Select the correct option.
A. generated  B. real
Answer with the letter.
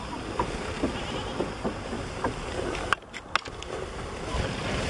B